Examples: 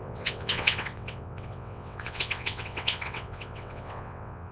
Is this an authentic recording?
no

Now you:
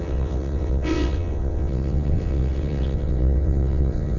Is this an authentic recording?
no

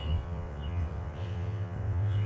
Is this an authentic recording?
no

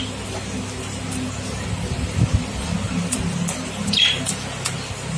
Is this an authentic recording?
yes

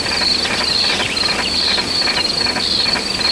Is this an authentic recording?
yes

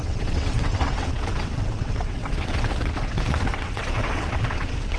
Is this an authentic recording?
no